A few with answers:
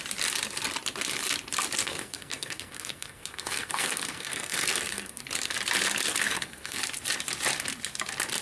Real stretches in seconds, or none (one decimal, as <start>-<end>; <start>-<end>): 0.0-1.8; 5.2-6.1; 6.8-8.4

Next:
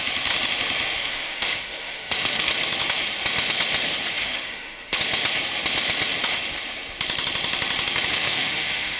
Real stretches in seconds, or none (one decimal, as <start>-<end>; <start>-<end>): 0.0-1.0; 2.5-4.2; 5.0-8.1

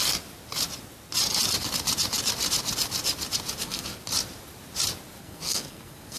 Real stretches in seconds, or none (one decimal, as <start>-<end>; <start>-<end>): 0.0-3.6; 4.0-5.2

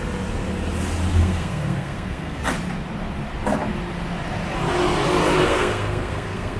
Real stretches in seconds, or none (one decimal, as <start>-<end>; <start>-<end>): 0.0-1.2; 2.4-5.4

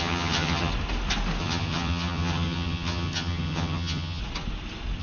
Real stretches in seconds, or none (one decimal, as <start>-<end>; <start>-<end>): 0.7-1.4; 4.2-5.0

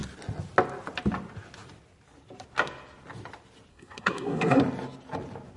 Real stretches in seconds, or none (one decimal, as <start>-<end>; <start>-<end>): 0.0-3.7; 4.6-5.6